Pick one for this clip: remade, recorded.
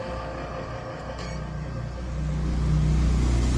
recorded